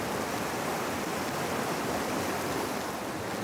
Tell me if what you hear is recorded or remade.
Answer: recorded